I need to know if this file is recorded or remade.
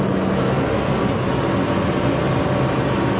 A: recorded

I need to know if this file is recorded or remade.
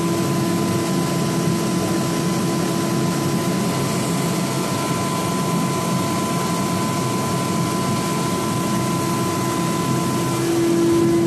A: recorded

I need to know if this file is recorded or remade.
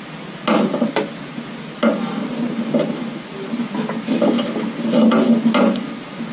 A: recorded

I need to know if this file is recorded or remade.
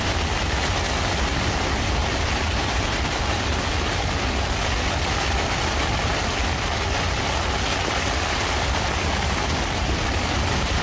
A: recorded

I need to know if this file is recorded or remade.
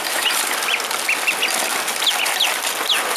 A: recorded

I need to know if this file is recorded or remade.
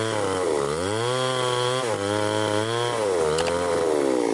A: recorded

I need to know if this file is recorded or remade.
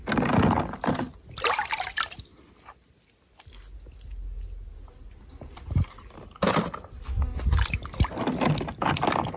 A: recorded